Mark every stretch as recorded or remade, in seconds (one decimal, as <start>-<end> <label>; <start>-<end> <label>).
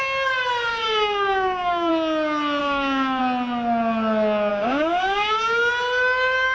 0.0-0.7 recorded; 0.7-1.9 remade; 1.9-2.6 recorded; 2.6-3.2 remade; 3.2-4.5 recorded; 4.5-5.7 remade; 5.7-6.5 recorded